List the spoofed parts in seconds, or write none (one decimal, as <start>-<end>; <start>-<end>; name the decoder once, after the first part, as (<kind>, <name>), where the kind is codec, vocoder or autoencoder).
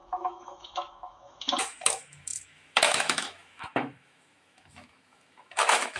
0.0-6.0 (autoencoder, DAC-VAE)